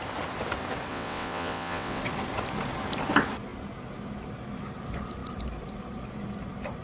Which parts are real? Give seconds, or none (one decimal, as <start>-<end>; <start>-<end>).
0.0-0.9; 2.0-6.8